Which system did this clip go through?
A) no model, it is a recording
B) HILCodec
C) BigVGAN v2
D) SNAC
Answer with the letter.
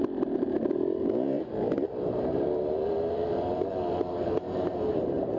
C